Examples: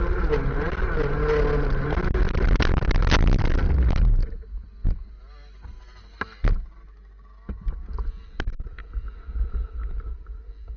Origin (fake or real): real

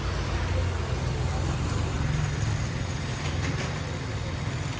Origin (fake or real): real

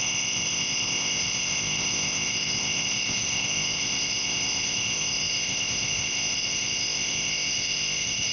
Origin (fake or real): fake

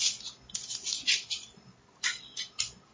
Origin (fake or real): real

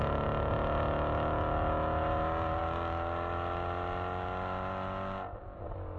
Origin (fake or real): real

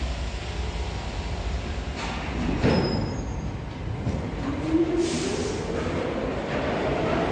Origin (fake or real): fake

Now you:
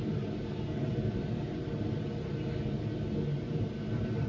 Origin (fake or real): real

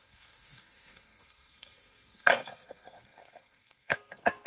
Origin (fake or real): fake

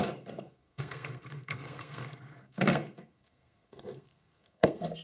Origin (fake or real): fake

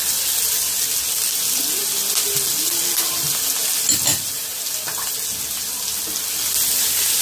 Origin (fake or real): real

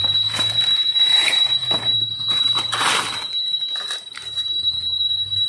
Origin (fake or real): real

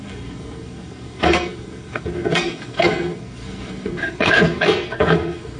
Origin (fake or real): fake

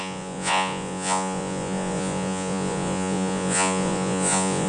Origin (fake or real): fake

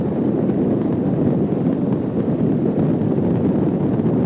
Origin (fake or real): real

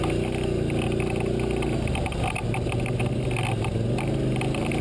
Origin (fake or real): real